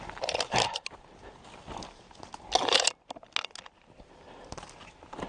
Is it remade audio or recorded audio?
recorded